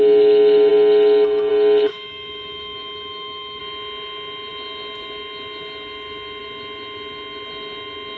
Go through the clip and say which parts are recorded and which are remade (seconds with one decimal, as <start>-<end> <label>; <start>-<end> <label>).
0.0-1.9 recorded; 1.9-3.6 remade; 3.6-8.2 recorded